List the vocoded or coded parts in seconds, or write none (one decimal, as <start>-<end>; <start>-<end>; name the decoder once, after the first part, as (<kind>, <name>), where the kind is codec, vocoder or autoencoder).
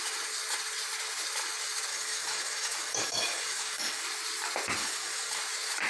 1.9-4.0 (codec, DAC); 4.8-5.4